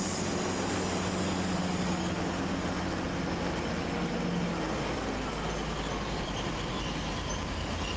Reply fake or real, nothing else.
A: real